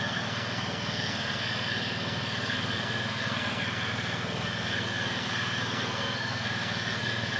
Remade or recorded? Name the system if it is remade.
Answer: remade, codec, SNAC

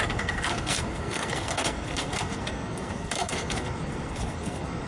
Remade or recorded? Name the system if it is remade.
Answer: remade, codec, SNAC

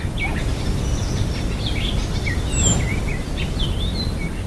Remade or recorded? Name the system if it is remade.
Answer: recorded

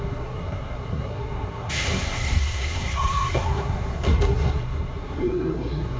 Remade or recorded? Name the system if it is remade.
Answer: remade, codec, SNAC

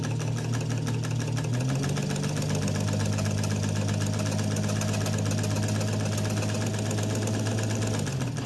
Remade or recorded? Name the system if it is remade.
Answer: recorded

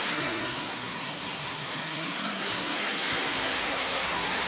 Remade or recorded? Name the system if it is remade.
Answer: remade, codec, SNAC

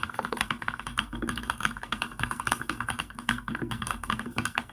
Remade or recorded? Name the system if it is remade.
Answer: remade, codec, SNAC